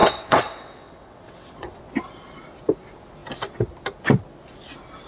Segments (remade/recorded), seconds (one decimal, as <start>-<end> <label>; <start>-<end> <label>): 0.0-1.9 remade; 1.9-5.1 recorded